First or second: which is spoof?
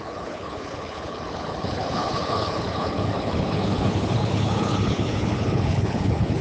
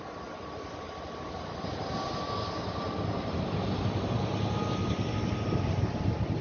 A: first